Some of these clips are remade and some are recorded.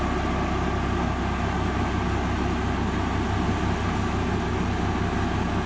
recorded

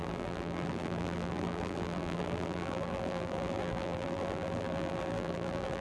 remade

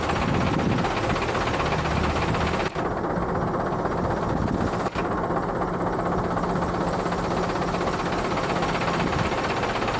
recorded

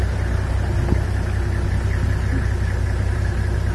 recorded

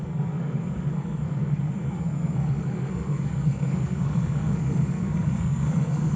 remade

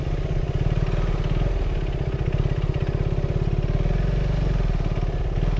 recorded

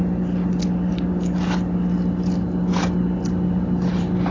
recorded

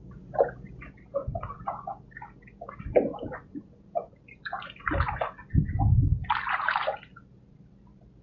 recorded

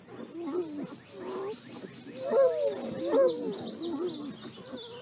recorded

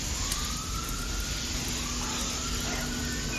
recorded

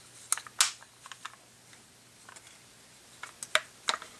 recorded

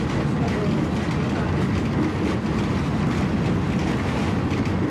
recorded